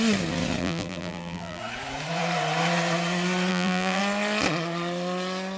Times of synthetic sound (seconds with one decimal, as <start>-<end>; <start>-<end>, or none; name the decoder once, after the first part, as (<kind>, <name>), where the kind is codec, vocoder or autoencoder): 0.6-1.6 (vocoder, BigVGAN v2); 3.5-4.0